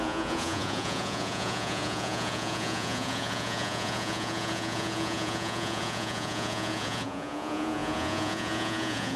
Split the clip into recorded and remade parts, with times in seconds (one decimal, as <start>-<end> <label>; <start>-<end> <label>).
0.0-9.2 remade